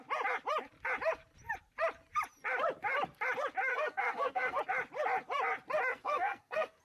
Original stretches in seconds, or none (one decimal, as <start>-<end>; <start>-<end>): 0.0-3.7; 4.6-5.9